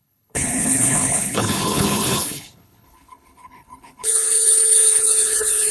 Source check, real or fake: fake